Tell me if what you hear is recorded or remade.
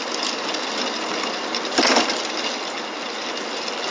recorded